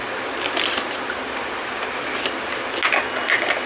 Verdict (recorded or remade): recorded